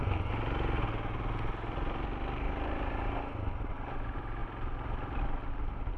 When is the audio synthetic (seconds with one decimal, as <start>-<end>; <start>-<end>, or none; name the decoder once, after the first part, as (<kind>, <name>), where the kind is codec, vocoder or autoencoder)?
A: 4.4-5.5 (vocoder, BigVGAN v2)